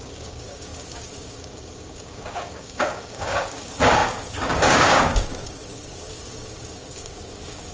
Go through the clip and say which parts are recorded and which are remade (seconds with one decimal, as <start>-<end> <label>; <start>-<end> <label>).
0.0-7.7 remade